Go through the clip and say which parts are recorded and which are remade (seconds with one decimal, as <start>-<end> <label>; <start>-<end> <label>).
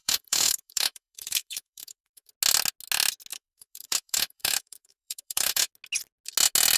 0.0-2.3 remade; 2.3-3.3 recorded; 3.3-5.7 remade; 5.7-6.8 recorded